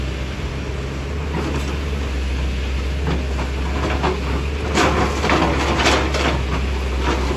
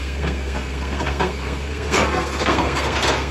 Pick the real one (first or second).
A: first